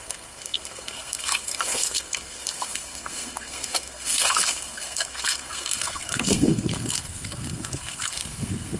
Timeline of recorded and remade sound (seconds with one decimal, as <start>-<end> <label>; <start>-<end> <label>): 0.0-8.8 remade